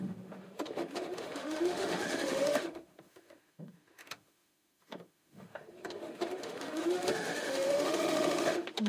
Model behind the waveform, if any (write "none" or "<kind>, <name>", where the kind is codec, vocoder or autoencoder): autoencoder, DAC-VAE